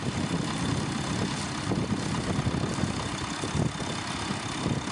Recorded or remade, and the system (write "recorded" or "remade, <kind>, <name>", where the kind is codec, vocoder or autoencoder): recorded